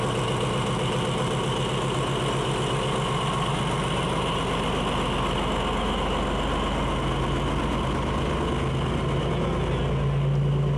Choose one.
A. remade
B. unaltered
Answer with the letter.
B